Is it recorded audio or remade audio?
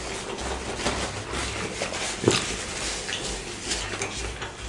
recorded